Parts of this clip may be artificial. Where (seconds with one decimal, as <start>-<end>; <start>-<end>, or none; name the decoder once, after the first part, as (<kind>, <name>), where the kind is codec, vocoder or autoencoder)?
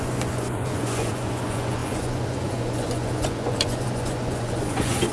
0.0-5.1 (vocoder, Vocos)